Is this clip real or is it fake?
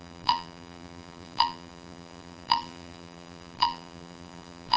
fake